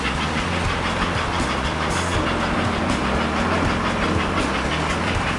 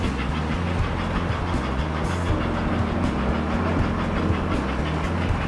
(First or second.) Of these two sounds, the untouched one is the second